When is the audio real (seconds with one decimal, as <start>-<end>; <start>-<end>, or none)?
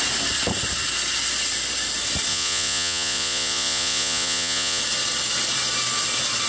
0.0-2.3; 4.8-6.5